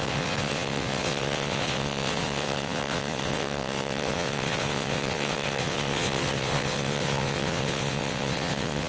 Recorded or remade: remade